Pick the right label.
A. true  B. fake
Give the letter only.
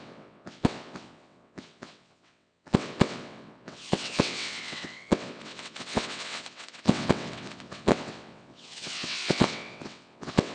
B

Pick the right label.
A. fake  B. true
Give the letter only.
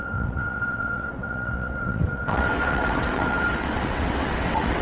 A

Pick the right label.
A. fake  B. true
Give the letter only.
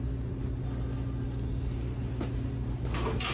B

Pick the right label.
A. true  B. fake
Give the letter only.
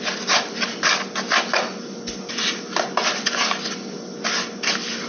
A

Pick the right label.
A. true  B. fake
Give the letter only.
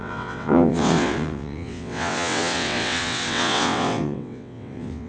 B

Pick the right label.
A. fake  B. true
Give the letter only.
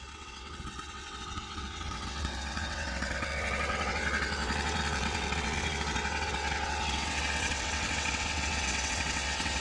A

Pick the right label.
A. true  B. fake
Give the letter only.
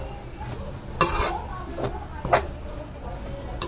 A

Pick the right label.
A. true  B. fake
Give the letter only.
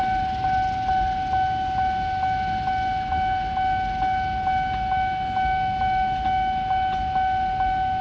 A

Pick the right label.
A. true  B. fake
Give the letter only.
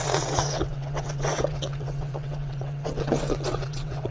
B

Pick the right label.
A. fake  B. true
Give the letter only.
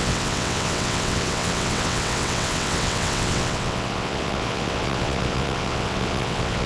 A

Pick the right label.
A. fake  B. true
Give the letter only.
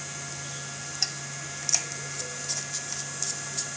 B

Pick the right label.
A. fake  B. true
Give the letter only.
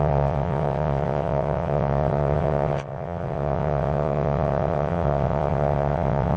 A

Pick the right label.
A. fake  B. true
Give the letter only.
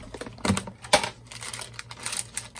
B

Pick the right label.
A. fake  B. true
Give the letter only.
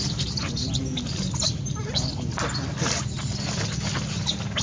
B